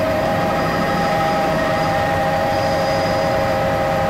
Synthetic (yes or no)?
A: yes